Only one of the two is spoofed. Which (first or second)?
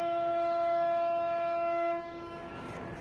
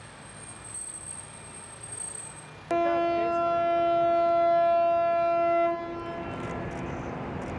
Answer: first